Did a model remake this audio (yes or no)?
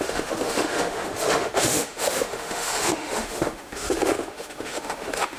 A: yes